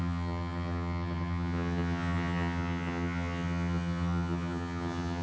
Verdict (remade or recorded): remade